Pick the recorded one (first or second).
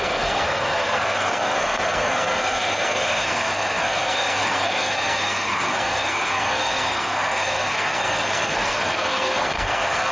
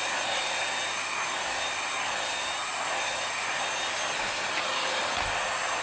second